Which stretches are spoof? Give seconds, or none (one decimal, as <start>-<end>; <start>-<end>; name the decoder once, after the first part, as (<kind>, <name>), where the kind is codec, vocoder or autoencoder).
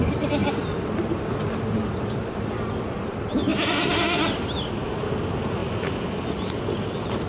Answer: 0.4-2.8 (vocoder, BigVGAN v2); 5.6-7.3